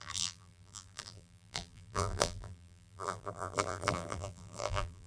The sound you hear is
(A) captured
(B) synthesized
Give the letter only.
B